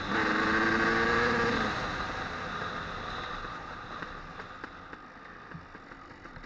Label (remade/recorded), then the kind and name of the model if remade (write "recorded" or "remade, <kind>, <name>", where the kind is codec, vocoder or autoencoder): recorded